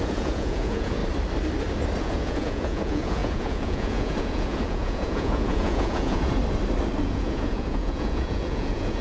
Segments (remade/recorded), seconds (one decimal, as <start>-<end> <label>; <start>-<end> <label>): 0.0-1.0 remade; 1.0-2.0 recorded; 2.0-6.4 remade; 6.4-7.0 recorded; 7.0-9.0 remade